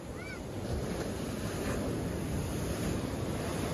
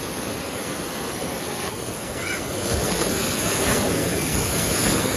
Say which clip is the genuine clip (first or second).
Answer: first